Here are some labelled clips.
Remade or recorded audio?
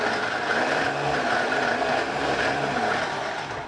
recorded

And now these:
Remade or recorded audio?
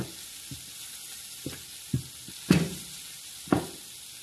recorded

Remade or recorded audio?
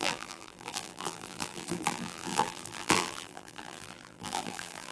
remade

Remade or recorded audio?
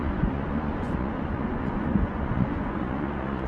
remade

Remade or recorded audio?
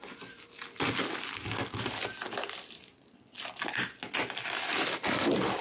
recorded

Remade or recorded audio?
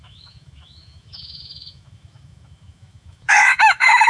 remade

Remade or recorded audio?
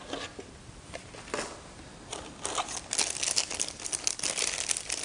recorded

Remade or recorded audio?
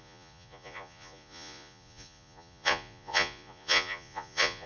remade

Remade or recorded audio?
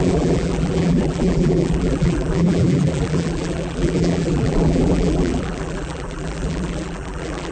remade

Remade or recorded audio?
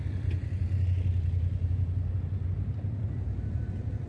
recorded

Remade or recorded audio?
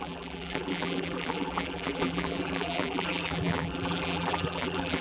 remade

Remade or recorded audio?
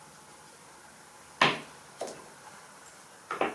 recorded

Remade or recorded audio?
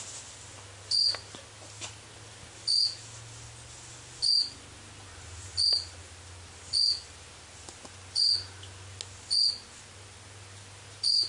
recorded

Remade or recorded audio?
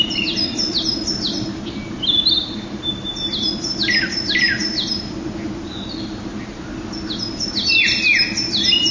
recorded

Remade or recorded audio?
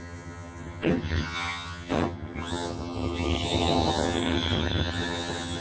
remade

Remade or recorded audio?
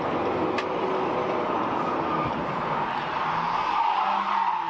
recorded